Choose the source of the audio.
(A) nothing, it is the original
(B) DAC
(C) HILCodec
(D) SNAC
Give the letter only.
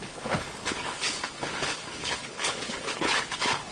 C